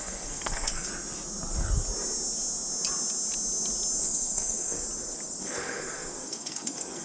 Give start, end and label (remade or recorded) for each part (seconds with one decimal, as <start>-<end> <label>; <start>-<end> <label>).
0.0-0.9 remade; 0.9-4.0 recorded; 4.0-4.8 remade; 4.8-5.4 recorded; 5.4-7.0 remade